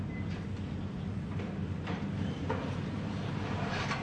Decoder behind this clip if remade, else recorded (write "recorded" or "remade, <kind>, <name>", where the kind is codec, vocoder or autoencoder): recorded